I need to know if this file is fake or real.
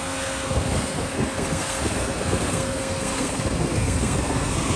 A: fake